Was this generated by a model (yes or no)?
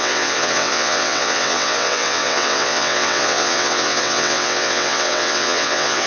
yes